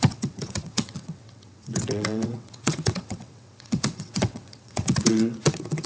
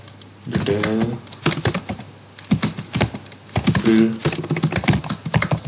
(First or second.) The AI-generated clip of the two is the first